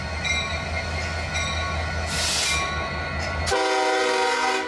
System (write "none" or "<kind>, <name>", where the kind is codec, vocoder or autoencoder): none